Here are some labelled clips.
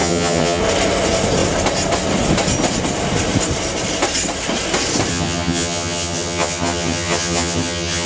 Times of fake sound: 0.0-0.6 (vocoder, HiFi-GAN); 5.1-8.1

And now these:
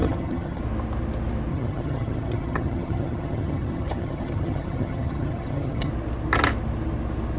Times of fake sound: 0.0-0.6 (vocoder, HiFi-GAN); 1.5-5.9